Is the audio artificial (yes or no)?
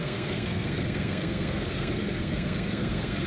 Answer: yes